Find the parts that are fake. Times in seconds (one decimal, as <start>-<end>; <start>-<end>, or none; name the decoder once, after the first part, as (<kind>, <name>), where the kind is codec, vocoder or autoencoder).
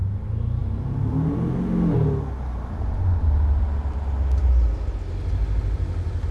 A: none